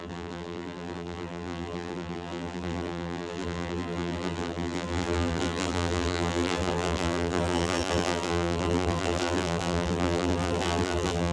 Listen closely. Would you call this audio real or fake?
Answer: fake